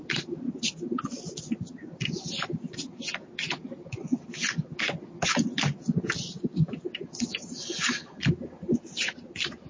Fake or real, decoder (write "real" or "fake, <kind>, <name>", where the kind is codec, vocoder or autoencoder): real